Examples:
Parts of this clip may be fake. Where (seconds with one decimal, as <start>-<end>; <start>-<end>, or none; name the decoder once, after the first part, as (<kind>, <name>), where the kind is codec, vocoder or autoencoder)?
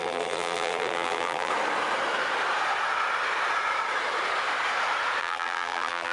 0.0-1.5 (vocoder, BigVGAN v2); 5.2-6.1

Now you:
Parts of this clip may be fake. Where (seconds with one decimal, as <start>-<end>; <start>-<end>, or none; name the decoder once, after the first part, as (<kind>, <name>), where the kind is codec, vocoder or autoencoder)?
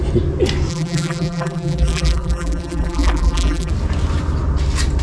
0.7-3.7 (vocoder, BigVGAN v2)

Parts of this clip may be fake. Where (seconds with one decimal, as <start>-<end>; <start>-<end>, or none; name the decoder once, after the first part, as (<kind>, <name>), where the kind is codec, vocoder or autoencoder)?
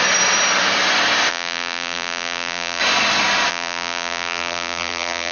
1.3-2.8 (vocoder, BigVGAN v2); 3.5-5.3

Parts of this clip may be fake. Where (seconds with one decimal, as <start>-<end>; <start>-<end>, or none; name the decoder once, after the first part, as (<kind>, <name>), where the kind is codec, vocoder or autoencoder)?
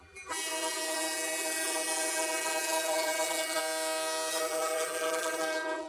0.0-3.6 (vocoder, BigVGAN v2); 4.3-5.9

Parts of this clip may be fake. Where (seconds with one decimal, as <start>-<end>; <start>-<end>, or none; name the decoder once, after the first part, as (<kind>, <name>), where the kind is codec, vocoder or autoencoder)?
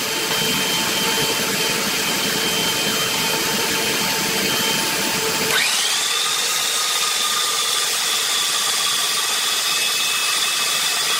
10.2-11.2 (vocoder, BigVGAN v2)